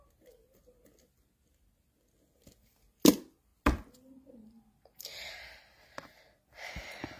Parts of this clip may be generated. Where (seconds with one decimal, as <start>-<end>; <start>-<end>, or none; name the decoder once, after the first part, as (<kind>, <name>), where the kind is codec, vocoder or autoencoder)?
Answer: none